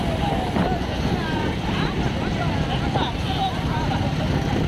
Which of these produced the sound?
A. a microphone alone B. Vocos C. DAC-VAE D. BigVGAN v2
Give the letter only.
A